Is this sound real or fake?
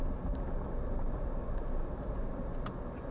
real